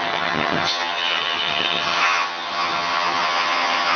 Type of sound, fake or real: fake